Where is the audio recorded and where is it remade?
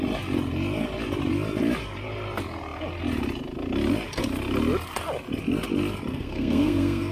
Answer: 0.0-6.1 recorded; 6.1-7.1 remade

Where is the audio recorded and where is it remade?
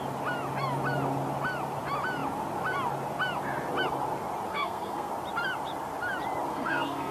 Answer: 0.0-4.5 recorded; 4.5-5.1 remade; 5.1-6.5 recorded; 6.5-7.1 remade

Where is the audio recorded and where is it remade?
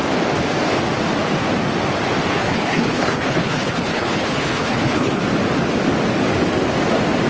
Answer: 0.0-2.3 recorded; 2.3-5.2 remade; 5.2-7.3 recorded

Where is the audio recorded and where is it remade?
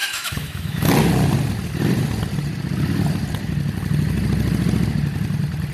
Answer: 0.0-0.9 remade; 0.9-5.7 recorded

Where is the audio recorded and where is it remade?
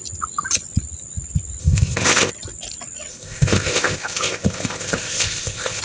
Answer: 0.0-1.6 recorded; 1.6-2.3 remade; 2.3-3.1 recorded; 3.1-5.8 remade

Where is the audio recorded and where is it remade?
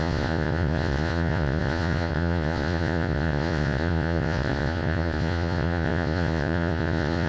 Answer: 0.0-7.3 remade